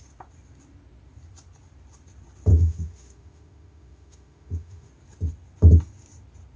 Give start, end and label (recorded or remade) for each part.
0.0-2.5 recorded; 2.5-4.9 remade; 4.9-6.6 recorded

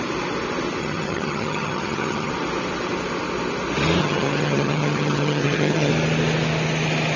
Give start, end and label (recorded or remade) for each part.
0.0-0.8 recorded; 0.8-2.3 remade; 2.3-4.0 recorded; 4.0-5.9 remade; 5.9-7.2 recorded

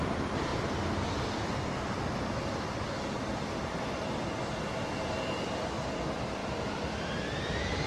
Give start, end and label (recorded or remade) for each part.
0.0-0.5 remade; 0.5-4.6 recorded; 4.6-7.9 remade

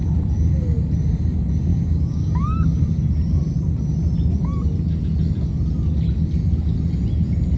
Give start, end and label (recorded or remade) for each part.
0.0-1.7 recorded; 1.7-2.3 remade; 2.3-7.6 recorded

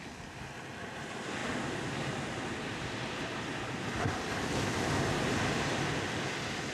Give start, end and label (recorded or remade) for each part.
0.0-6.7 recorded

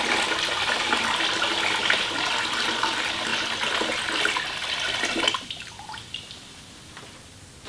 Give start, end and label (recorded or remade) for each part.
0.0-7.7 recorded

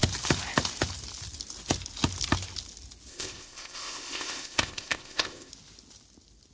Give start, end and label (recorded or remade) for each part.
0.0-3.1 recorded; 3.1-5.5 remade; 5.5-6.5 recorded